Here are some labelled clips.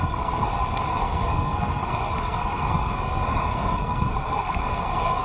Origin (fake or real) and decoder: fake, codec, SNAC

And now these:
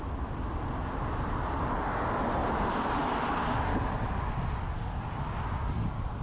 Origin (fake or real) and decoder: real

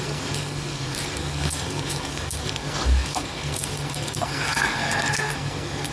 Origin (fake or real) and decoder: fake, codec, SNAC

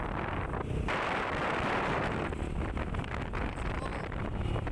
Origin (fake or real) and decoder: real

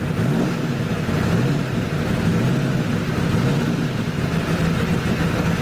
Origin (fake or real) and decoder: real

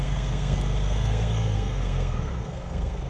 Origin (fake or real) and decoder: fake, codec, SNAC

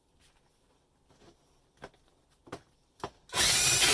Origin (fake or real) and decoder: real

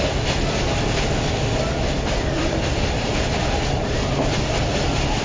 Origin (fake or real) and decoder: real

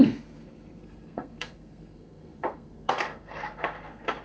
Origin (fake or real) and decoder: fake, codec, SNAC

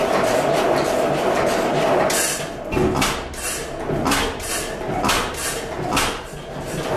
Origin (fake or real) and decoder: real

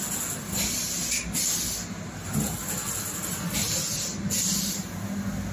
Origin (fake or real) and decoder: real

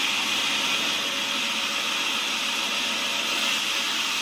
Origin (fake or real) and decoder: real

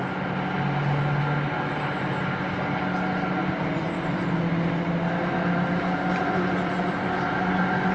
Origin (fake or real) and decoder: real